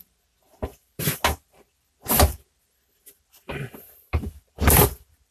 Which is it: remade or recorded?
recorded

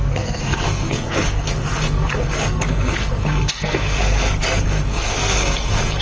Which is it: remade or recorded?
remade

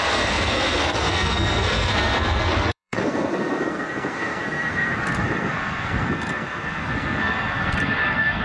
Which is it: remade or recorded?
remade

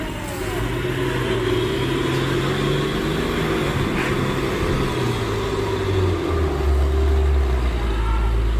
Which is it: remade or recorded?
recorded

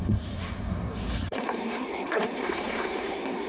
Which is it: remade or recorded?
remade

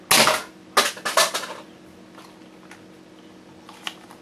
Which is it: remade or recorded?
recorded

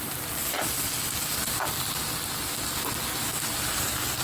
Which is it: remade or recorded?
recorded